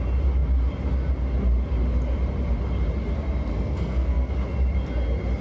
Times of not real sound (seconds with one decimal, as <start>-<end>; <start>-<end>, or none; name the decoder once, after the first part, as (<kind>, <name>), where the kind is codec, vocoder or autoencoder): 3.5-4.3 (codec, SNAC)